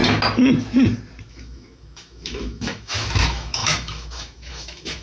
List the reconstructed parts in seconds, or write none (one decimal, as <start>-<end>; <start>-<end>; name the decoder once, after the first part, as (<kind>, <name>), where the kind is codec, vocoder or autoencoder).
1.3-5.0 (autoencoder, DAC-VAE)